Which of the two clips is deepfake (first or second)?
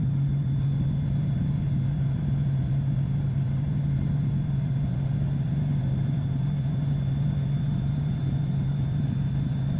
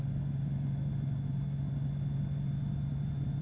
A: first